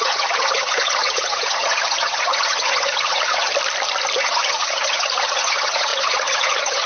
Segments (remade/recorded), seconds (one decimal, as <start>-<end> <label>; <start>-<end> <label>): 0.0-3.5 remade; 3.5-4.2 recorded; 4.2-6.9 remade